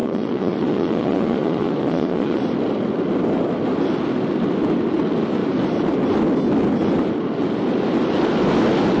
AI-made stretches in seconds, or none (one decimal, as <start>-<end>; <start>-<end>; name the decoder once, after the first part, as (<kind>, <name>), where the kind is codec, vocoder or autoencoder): 0.0-2.4 (vocoder, Vocos)